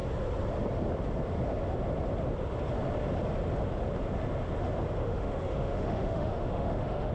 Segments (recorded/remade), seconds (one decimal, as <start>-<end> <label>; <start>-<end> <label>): 0.0-5.0 recorded; 5.0-7.1 remade